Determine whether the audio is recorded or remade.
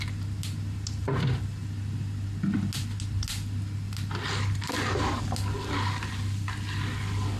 recorded